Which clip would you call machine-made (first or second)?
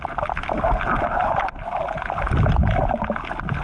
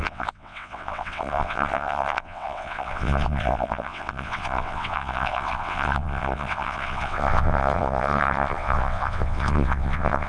second